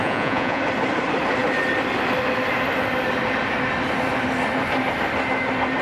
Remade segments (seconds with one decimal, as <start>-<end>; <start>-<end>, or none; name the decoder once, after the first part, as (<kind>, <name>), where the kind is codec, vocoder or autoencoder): 0.0-0.6 (vocoder, Vocos)

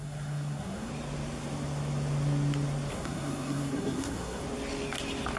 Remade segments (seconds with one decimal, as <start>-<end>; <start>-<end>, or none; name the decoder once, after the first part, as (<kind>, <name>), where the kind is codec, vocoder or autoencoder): 0.0-0.9 (codec, SNAC); 2.9-4.4